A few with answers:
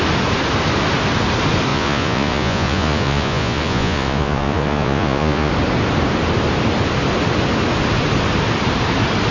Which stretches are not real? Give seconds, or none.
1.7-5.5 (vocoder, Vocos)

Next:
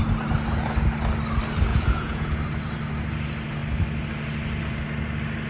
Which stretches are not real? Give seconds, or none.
1.7-2.4 (vocoder, Vocos)

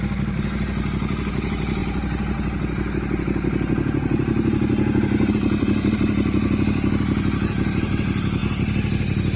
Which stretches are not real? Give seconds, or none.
none

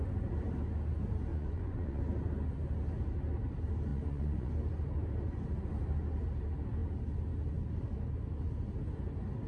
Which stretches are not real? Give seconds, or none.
1.3-2.0 (vocoder, Vocos); 3.9-4.5

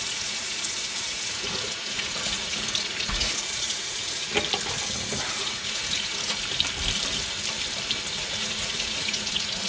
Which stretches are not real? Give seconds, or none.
0.0-4.3 (vocoder, Vocos); 5.4-6.4; 8.2-9.7

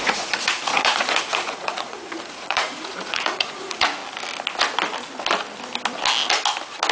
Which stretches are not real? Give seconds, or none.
0.0-4.0 (vocoder, Vocos)

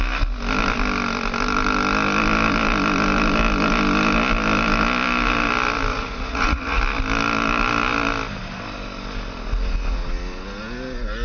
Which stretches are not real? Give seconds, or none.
5.9-6.8 (vocoder, Vocos)

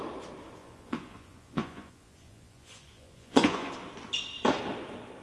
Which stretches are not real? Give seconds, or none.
0.6-3.7 (vocoder, Vocos)